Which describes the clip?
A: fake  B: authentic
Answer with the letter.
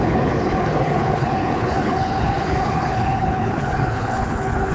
A